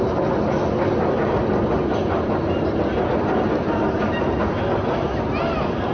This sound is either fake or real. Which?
real